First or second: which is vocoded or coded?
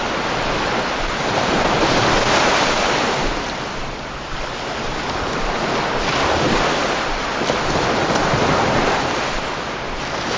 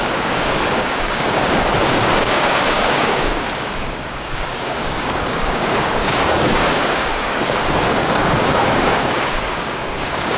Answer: second